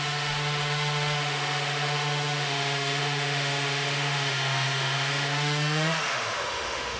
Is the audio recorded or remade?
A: remade